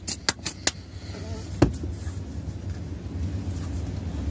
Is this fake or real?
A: real